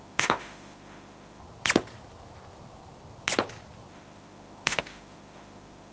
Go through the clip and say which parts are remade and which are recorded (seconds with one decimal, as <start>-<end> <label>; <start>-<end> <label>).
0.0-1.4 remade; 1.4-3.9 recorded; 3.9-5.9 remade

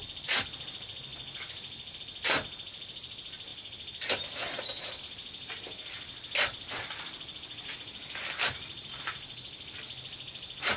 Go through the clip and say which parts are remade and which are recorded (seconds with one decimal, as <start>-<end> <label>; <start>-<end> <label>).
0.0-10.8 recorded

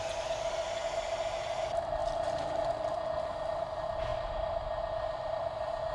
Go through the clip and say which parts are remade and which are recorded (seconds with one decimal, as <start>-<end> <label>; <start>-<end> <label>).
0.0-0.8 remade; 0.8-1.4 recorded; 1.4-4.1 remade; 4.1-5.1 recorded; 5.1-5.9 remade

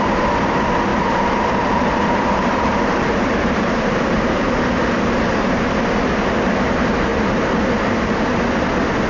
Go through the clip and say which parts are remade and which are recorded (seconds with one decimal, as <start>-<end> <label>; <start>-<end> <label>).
0.0-0.9 recorded; 0.9-4.4 remade; 4.4-9.1 recorded